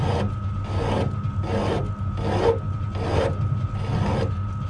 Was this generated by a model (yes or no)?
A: no